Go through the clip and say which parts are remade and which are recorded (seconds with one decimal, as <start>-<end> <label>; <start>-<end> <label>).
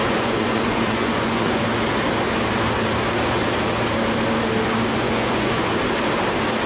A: 0.0-1.6 remade; 1.6-4.9 recorded; 4.9-5.7 remade; 5.7-6.7 recorded